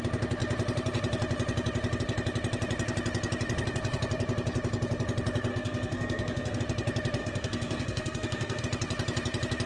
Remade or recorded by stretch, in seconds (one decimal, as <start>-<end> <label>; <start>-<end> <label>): 0.0-5.5 recorded; 5.5-6.6 remade; 6.6-7.2 recorded; 7.2-8.6 remade; 8.6-9.7 recorded